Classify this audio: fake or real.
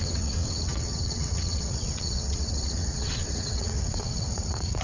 fake